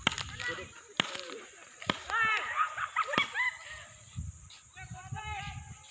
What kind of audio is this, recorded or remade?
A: recorded